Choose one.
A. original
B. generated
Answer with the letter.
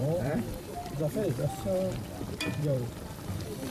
B